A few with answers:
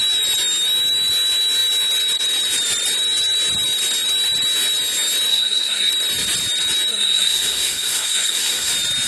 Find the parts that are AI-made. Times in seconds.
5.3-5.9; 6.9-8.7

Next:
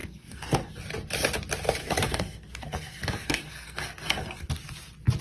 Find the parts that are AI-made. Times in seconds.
0.0-0.8; 1.8-4.5

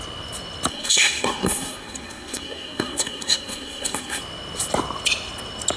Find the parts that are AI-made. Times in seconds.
0.7-4.2

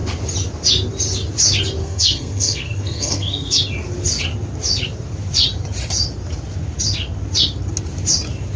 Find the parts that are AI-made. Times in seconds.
1.8-3.6

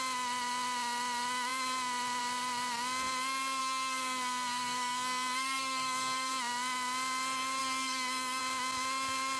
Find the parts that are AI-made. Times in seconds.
3.6-6.3; 7.6-8.4

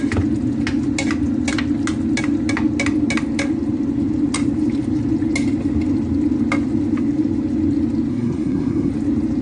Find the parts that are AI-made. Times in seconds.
8.1-8.9